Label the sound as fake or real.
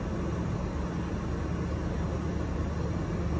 real